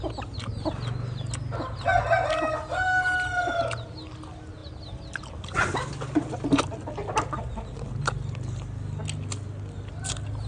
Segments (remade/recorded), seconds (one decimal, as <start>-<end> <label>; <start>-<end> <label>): 0.0-10.5 recorded